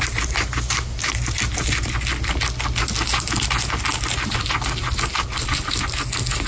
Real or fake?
real